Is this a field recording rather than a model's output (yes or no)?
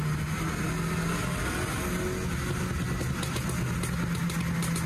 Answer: yes